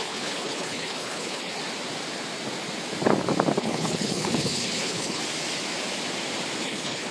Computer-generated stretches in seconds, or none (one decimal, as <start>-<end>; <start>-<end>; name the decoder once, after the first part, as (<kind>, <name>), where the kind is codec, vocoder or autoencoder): 0.0-1.6 (codec, HILCodec); 3.6-5.2; 6.6-7.1